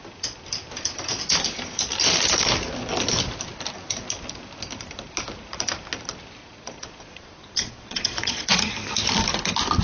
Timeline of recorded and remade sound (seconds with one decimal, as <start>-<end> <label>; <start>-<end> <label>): 0.0-6.4 recorded; 6.4-8.6 remade; 8.6-9.8 recorded